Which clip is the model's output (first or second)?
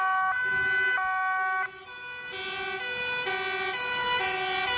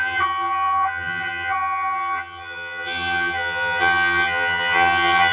second